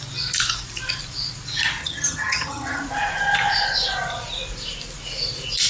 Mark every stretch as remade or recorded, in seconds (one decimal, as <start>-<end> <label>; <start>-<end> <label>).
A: 0.0-1.8 recorded; 1.8-2.8 remade; 2.8-5.7 recorded